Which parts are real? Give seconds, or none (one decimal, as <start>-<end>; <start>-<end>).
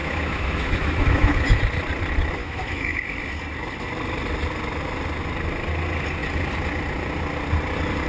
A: 1.6-2.4; 3.0-8.1